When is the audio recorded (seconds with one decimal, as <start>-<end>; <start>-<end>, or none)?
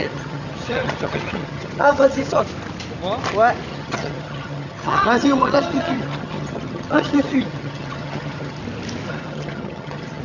2.4-3.7; 8.6-9.1